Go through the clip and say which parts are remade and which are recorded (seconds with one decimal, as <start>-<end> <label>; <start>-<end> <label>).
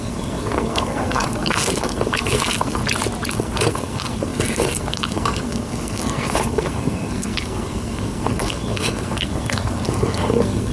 0.0-2.8 remade; 2.8-3.3 recorded; 3.3-10.7 remade